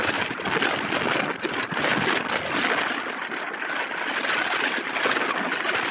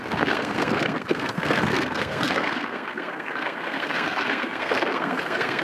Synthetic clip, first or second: second